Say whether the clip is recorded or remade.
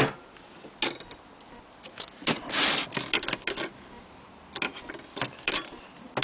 recorded